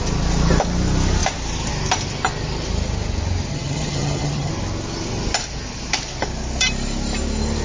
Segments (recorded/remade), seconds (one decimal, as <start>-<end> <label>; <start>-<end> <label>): 0.0-3.5 recorded; 3.5-4.5 remade; 4.5-7.6 recorded